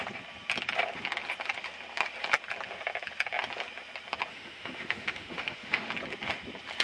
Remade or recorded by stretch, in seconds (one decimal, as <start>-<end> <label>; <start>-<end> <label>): 0.0-4.3 recorded; 4.3-5.9 remade; 5.9-6.8 recorded